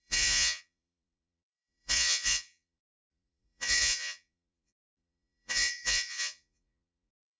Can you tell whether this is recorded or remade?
remade